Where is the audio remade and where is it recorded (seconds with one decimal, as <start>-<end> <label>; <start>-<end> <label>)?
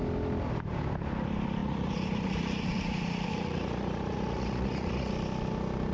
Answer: 0.0-1.6 recorded; 1.6-5.1 remade; 5.1-5.9 recorded